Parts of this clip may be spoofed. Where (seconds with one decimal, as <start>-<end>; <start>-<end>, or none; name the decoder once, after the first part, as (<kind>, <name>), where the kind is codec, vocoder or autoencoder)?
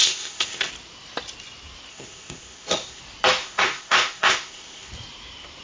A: 0.0-0.7 (codec, ZipCodec); 1.9-3.0; 3.4-4.9